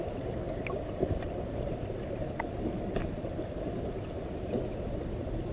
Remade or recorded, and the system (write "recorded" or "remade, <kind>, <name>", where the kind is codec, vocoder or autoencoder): recorded